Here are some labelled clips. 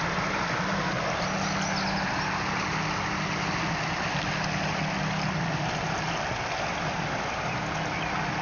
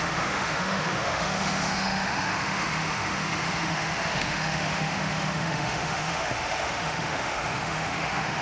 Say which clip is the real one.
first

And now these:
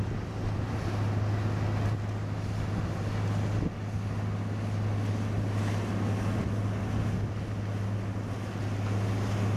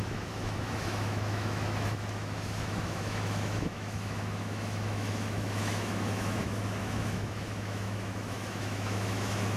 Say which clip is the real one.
first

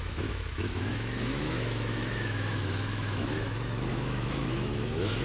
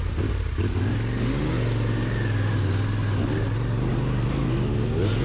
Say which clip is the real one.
second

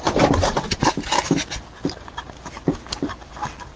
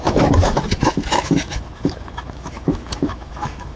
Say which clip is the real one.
first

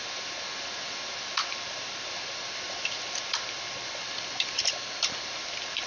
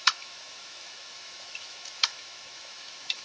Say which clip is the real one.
first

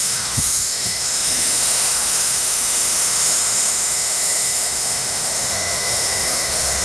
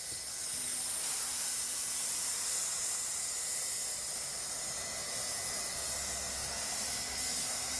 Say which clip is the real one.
second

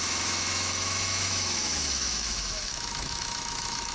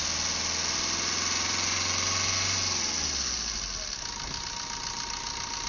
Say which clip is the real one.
second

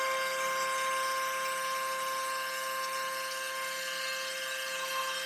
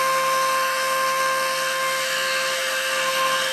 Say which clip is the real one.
first